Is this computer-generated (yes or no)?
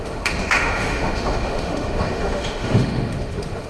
yes